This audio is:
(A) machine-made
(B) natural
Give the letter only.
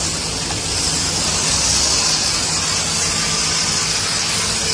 B